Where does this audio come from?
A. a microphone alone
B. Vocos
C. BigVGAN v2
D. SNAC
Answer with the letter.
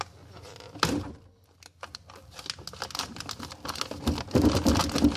A